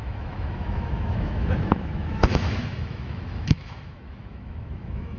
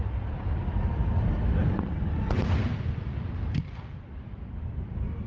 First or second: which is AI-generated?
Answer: first